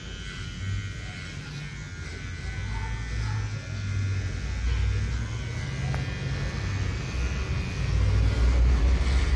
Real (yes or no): yes